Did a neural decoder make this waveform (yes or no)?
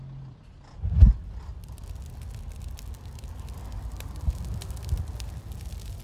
no